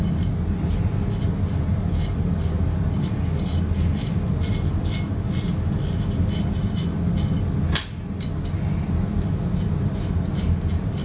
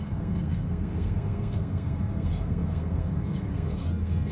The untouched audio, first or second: first